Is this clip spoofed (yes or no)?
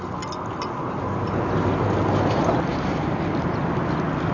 no